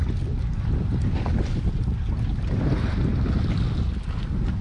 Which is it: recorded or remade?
recorded